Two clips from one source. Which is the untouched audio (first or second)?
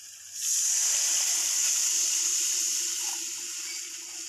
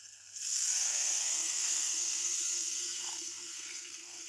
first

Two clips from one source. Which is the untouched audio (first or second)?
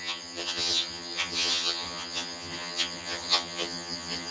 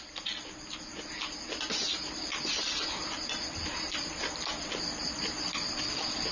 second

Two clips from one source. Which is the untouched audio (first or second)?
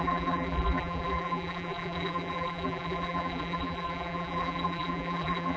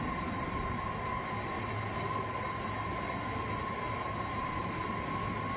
second